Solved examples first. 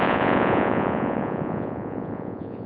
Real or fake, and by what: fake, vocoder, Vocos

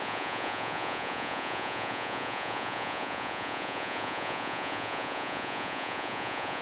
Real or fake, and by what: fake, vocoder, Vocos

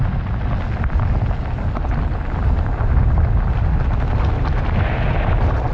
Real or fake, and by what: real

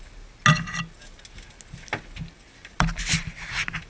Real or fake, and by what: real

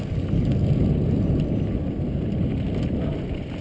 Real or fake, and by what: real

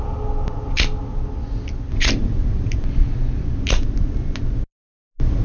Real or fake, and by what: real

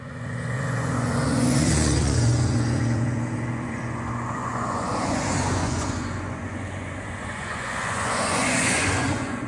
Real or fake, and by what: fake, vocoder, Vocos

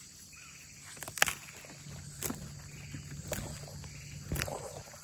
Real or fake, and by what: real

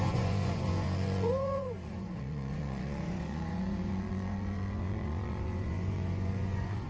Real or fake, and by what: fake, vocoder, Vocos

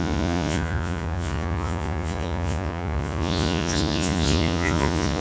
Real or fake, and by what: fake, vocoder, Vocos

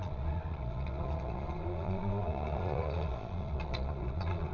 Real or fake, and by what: fake, vocoder, Vocos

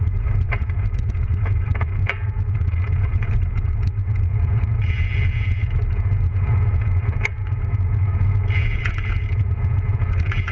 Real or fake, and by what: fake, vocoder, Vocos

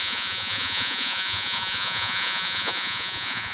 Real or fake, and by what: fake, vocoder, Vocos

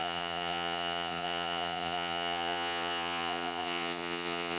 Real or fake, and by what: fake, vocoder, Vocos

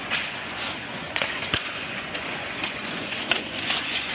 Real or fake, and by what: fake, vocoder, Vocos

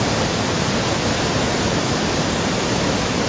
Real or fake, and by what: real